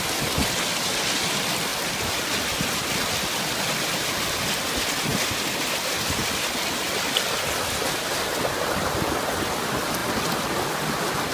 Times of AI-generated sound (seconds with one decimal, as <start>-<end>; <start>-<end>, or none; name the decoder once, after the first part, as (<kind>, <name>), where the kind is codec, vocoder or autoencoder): none